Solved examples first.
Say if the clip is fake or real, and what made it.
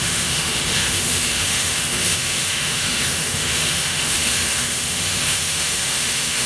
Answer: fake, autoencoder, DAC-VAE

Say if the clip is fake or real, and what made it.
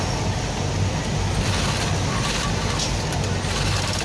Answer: real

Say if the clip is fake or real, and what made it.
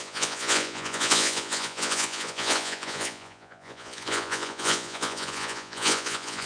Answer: fake, vocoder, Vocos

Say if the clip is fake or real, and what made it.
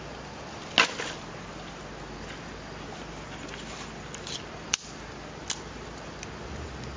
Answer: real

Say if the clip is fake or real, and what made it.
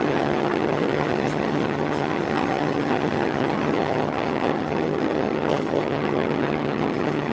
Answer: fake, vocoder, HiFi-GAN